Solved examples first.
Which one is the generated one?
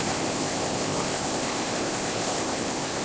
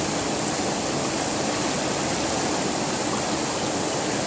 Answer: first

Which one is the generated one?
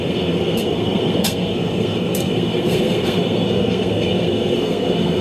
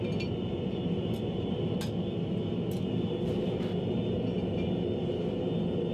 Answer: first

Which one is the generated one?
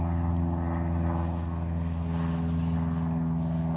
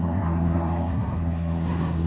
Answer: second